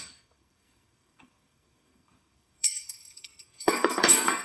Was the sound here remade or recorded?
remade